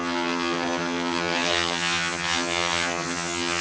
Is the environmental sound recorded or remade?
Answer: remade